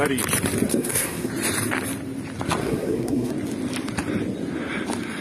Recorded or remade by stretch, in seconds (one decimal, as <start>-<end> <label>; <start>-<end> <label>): 0.0-0.7 recorded; 0.7-1.3 remade; 1.3-2.6 recorded; 2.6-3.3 remade; 3.3-5.2 recorded